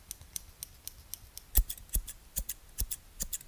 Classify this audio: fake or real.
real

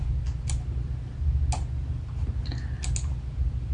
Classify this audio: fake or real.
real